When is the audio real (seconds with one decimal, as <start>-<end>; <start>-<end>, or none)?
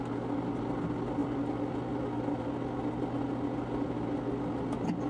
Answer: 0.0-5.1